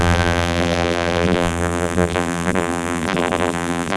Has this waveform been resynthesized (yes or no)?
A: yes